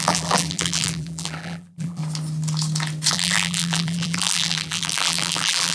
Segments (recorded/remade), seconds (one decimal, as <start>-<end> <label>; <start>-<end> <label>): 0.0-2.0 remade; 2.0-3.1 recorded; 3.1-5.7 remade